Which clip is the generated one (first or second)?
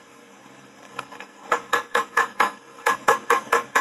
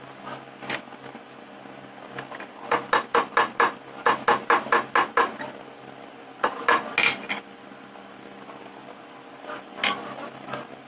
first